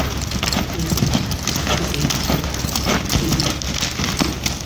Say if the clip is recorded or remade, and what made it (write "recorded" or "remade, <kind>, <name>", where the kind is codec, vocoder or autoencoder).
recorded